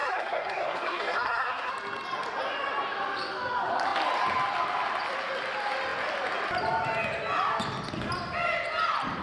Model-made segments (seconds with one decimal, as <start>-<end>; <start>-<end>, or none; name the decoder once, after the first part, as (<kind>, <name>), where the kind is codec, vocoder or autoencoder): 0.0-1.7 (codec, SNAC)